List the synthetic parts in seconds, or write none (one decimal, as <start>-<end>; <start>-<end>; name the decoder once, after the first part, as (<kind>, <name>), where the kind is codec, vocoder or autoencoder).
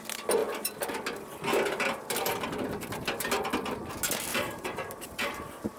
4.3-5.8 (vocoder, BigVGAN v2)